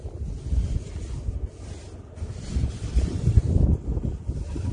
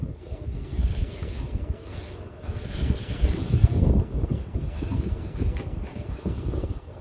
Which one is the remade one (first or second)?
second